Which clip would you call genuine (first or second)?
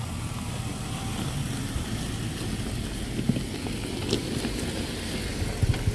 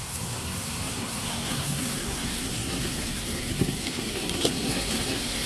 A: first